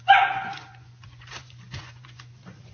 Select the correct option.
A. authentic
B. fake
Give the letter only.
B